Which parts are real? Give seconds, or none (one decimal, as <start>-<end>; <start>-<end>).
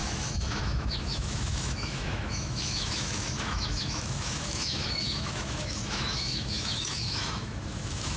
none